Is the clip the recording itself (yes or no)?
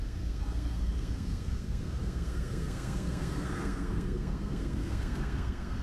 no